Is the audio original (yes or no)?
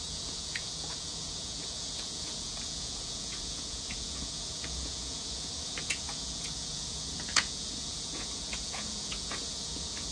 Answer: no